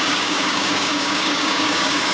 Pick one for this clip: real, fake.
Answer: fake